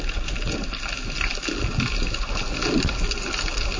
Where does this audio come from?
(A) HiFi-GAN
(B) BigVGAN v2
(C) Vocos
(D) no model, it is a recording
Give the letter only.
D